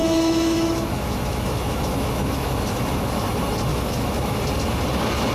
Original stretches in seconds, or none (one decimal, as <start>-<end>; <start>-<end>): 3.1-3.7; 4.4-5.3

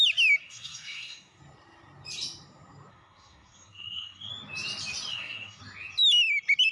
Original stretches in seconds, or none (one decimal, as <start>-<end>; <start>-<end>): 0.0-0.4; 1.4-2.9; 4.3-5.1; 5.6-6.7

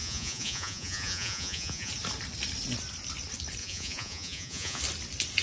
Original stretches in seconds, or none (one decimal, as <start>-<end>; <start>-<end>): 1.9-3.6; 4.8-5.4